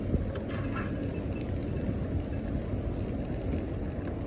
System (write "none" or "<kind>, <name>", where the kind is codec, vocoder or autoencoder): none